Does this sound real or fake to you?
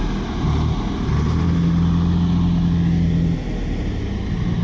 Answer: real